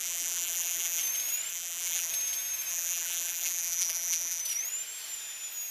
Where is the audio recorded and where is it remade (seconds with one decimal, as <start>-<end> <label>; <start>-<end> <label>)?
0.0-1.0 remade; 1.0-1.5 recorded; 1.5-2.1 remade; 2.1-2.7 recorded; 2.7-4.4 remade; 4.4-5.7 recorded